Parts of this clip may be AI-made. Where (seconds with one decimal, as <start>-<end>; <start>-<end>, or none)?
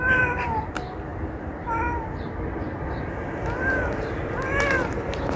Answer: 0.0-5.4